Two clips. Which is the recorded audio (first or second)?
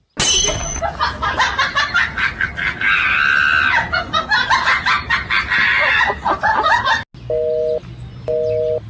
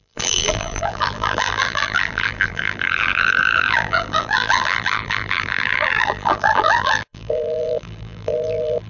first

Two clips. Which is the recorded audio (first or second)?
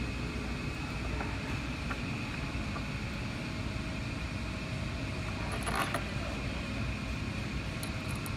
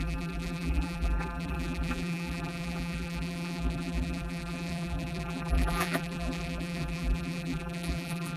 first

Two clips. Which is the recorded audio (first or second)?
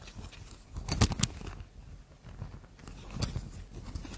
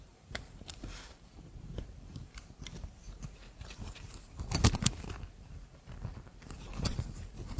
first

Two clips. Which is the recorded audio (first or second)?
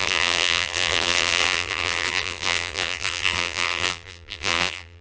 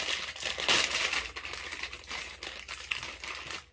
second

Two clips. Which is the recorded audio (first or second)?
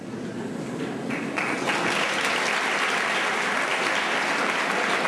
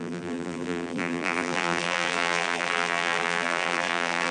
first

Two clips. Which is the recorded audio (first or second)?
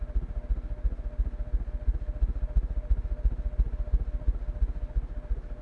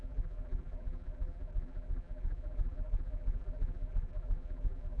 first